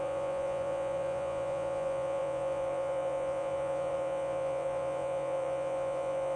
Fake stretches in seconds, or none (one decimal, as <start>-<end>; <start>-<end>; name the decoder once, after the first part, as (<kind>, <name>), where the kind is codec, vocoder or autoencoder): 0.0-6.4 (vocoder, Vocos)